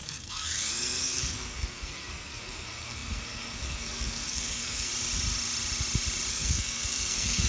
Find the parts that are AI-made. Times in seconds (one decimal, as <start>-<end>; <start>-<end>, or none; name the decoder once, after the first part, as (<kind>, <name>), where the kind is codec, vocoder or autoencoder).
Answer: 0.0-4.9 (codec, SNAC); 6.3-7.5